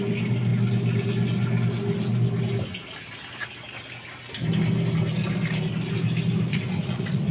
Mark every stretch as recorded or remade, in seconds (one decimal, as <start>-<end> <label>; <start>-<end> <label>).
0.0-6.5 recorded; 6.5-7.3 remade